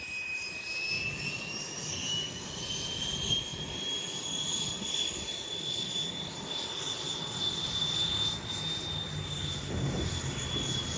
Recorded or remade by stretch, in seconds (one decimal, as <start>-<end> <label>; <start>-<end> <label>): 0.0-1.9 recorded; 1.9-2.6 remade; 2.6-11.0 recorded